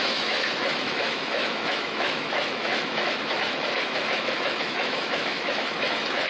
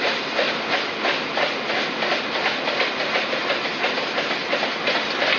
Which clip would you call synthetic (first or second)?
first